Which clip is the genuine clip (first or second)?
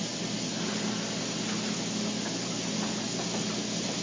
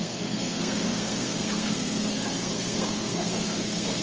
first